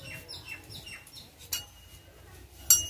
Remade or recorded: recorded